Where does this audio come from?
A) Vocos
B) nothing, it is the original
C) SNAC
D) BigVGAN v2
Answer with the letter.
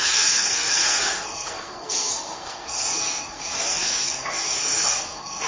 C